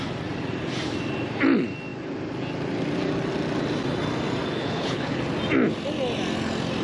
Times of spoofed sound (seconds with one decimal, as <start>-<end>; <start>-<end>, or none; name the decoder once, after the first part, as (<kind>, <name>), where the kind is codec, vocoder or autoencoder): 4.6-5.2 (codec, HILCodec)

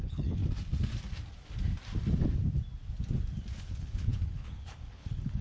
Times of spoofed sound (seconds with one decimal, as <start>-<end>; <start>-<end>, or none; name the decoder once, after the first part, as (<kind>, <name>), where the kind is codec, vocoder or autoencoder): 0.0-0.4 (codec, HILCodec); 3.6-5.4

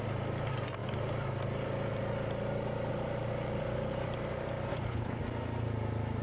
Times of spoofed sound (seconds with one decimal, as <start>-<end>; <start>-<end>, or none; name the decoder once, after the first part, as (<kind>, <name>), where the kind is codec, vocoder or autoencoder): 4.7-5.2 (codec, HILCodec)

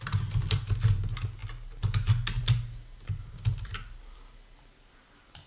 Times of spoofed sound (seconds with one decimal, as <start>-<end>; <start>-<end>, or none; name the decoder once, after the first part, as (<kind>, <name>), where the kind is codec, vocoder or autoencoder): none

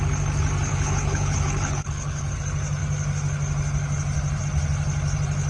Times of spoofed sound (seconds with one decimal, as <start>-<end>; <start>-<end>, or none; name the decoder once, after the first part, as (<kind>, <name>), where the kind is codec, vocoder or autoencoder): 0.7-2.4 (codec, HILCodec)

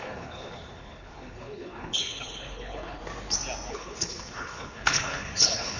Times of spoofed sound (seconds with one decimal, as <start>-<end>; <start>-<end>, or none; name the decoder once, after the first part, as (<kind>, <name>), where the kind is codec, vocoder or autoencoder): 0.0-3.0 (codec, HILCodec); 3.7-5.8

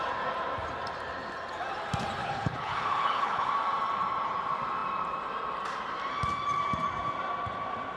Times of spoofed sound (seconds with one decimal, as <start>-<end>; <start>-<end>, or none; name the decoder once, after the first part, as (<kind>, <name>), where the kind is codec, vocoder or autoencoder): 2.2-3.5 (codec, HILCodec)

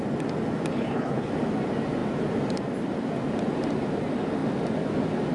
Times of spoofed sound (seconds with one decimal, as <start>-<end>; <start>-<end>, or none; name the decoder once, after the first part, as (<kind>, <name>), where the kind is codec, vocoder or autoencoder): 0.7-1.3 (codec, HILCodec)